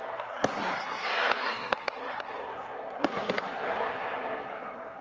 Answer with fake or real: fake